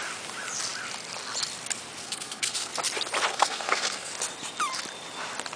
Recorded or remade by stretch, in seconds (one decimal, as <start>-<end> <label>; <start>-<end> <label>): 0.0-2.0 recorded; 2.0-2.7 remade; 2.7-3.3 recorded; 3.3-4.1 remade; 4.1-5.6 recorded